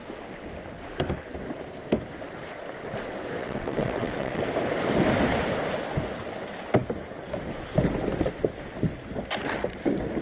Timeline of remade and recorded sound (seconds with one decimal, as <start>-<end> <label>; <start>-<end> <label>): 0.0-3.4 recorded; 3.4-4.4 remade; 4.4-10.2 recorded